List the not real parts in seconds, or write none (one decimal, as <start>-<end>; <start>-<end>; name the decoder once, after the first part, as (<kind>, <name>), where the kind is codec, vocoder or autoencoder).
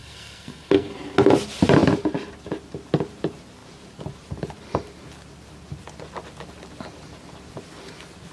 0.0-0.9 (codec, SNAC)